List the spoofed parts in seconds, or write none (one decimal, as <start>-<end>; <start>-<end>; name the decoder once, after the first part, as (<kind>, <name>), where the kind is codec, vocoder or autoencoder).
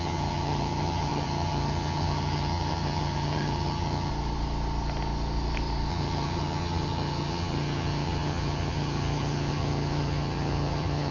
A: 0.0-4.1 (vocoder, HiFi-GAN); 5.9-11.1